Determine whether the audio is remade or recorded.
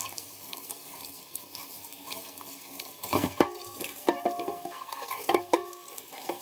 remade